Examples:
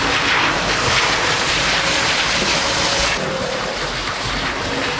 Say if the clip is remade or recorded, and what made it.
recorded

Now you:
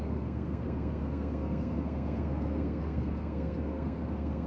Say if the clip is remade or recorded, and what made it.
remade, codec, SNAC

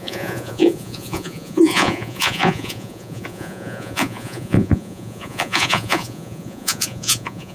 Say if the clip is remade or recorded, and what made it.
remade, vocoder, Vocos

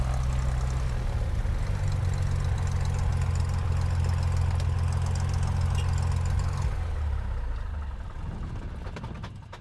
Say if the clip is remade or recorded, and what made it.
recorded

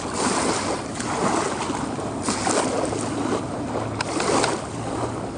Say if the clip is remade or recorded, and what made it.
recorded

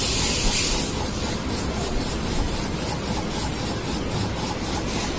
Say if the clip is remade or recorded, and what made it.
recorded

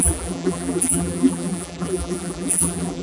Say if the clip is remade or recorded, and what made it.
remade, vocoder, BigVGAN v2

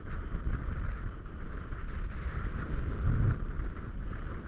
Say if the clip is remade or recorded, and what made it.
recorded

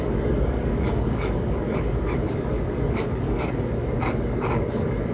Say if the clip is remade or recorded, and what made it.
remade, codec, DAC